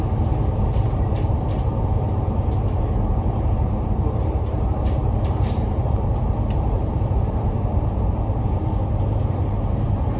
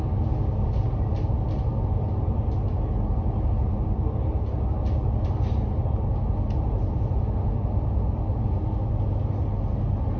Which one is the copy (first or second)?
first